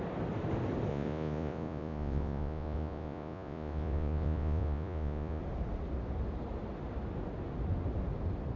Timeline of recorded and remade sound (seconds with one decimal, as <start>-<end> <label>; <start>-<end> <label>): 0.0-0.9 recorded; 0.9-5.4 remade; 5.4-8.6 recorded